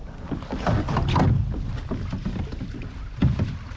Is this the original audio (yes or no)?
yes